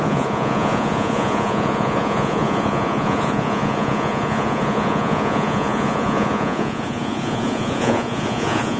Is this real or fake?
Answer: fake